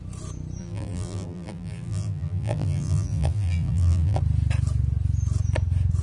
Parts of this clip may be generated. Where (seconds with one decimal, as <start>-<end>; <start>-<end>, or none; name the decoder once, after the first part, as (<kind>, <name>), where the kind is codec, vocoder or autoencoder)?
0.6-4.2 (vocoder, BigVGAN v2)